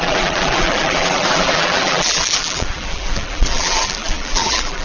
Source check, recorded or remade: remade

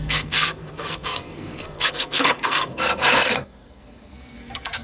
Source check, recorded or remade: remade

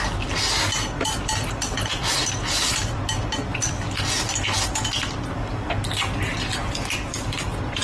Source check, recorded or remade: recorded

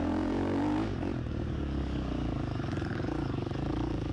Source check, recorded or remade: remade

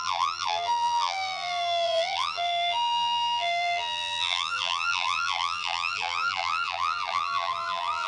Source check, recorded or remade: remade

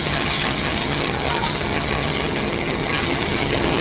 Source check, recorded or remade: remade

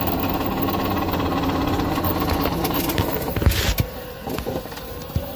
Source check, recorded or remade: recorded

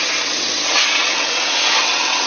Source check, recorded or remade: remade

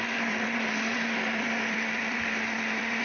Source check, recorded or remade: remade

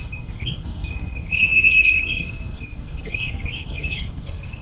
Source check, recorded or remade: remade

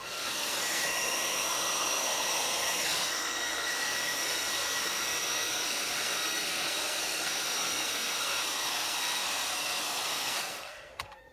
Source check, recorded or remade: remade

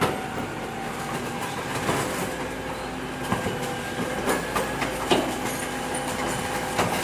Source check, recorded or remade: recorded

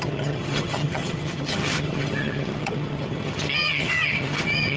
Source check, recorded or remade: remade